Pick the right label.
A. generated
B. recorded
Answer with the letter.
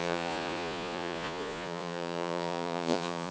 A